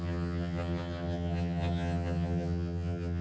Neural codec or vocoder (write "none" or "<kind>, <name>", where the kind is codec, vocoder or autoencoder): vocoder, HiFi-GAN